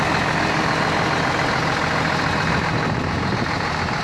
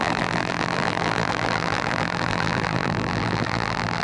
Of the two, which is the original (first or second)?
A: first